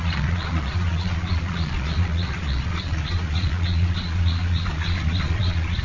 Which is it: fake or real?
fake